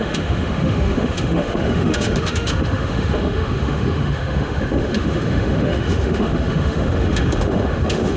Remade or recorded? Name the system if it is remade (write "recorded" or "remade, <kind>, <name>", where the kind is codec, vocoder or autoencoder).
remade, autoencoder, DAC-VAE